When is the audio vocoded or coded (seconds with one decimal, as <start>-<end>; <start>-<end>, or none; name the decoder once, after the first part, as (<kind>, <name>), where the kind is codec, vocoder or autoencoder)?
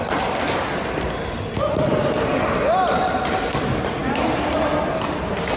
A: 0.0-4.0 (vocoder, BigVGAN v2)